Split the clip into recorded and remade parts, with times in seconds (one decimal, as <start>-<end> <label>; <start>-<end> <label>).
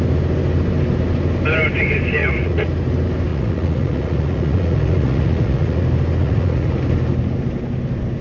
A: 0.0-2.2 recorded; 2.2-2.7 remade; 2.7-3.3 recorded; 3.3-5.8 remade; 5.8-6.2 recorded; 6.2-6.7 remade; 6.7-8.2 recorded